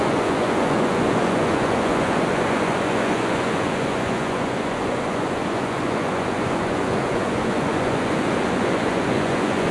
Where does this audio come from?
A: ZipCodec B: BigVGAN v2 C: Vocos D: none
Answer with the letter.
C